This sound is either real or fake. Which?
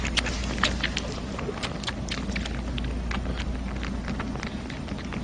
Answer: real